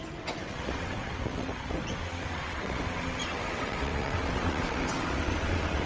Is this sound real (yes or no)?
no